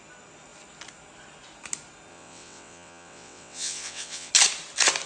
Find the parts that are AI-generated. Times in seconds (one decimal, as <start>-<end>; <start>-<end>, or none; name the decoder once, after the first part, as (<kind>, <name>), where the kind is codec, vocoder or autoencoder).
2.1-4.3 (vocoder, WaveNeXt)